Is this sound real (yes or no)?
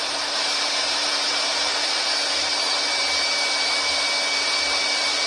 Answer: no